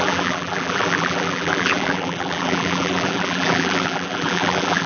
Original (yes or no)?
no